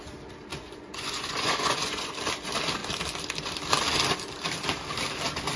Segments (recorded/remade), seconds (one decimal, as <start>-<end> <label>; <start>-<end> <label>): 0.0-0.5 recorded; 0.5-2.1 remade; 2.1-5.6 recorded